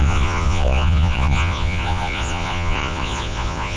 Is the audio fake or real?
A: fake